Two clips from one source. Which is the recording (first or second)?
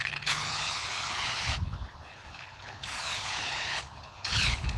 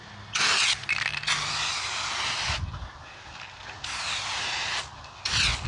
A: second